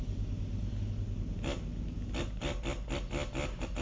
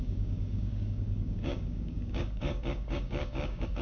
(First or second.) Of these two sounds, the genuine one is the first